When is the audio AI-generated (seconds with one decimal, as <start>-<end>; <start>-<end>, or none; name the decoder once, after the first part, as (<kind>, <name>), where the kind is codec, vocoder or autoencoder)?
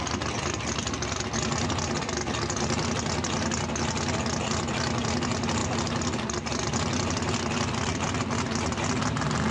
none